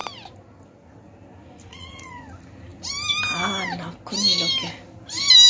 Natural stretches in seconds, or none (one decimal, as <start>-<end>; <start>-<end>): 0.0-1.7; 2.3-5.5